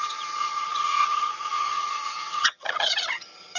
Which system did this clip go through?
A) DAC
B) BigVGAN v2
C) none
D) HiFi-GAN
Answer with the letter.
D